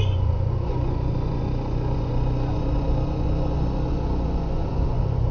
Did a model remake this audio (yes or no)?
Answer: yes